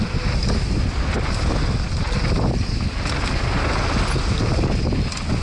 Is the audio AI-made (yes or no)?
no